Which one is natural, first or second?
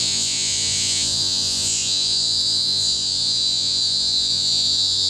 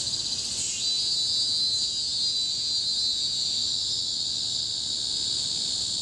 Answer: second